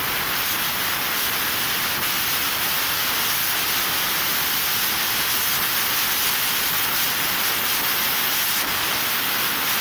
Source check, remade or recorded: recorded